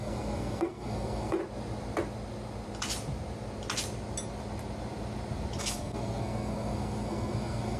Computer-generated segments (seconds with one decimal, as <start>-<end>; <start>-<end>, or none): 0.0-1.4; 5.6-7.8